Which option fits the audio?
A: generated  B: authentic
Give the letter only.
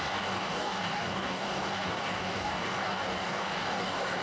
A